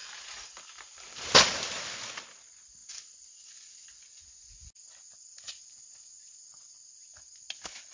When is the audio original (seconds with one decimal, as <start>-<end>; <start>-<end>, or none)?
1.2-7.9